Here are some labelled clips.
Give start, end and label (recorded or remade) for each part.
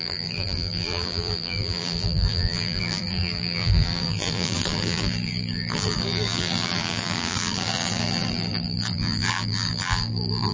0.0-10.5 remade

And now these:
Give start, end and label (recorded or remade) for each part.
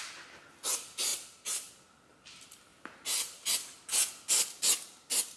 0.0-5.4 recorded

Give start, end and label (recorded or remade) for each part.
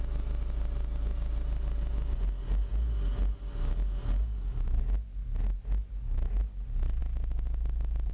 0.0-8.1 recorded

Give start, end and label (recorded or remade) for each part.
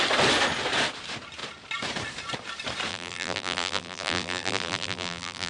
0.0-2.9 recorded; 2.9-5.5 remade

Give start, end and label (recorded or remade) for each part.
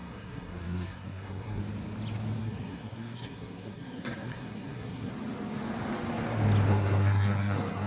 0.0-1.6 remade; 1.6-2.4 recorded; 2.4-5.1 remade; 5.1-6.7 recorded; 6.7-7.9 remade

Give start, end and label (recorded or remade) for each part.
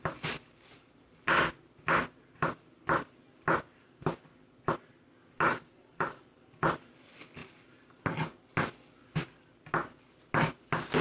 0.0-5.5 recorded; 5.5-6.2 remade; 6.2-11.0 recorded